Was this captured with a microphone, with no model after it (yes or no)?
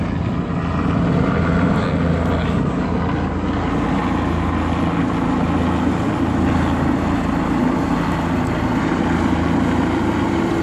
yes